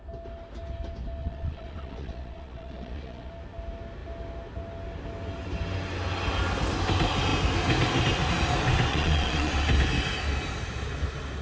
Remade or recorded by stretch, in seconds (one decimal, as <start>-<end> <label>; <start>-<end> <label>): 0.0-1.2 recorded; 1.2-3.3 remade; 3.3-8.9 recorded; 8.9-9.5 remade; 9.5-11.4 recorded